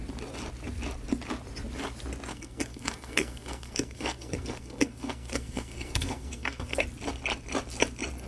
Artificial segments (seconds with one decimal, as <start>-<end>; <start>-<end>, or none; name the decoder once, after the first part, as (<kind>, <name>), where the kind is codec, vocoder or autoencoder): 2.3-6.8 (codec, SNAC)